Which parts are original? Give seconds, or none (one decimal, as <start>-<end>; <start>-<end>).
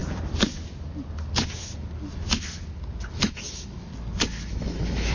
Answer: 0.0-3.1; 3.9-4.5